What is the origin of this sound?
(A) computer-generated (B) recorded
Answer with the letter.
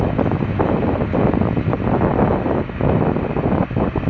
B